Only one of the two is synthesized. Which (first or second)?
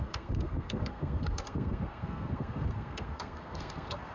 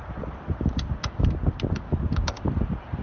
first